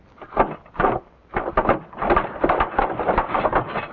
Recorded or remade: recorded